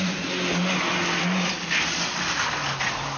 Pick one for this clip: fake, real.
real